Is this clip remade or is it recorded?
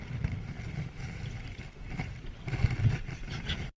remade